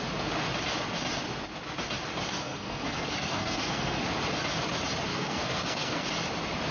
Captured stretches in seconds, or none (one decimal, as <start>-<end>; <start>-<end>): 0.0-2.3; 4.0-5.1; 6.1-6.7